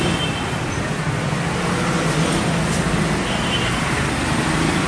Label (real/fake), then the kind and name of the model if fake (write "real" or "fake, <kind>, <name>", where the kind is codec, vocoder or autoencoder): real